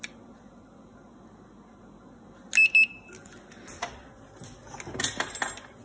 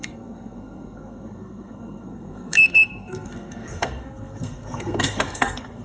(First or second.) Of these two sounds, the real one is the first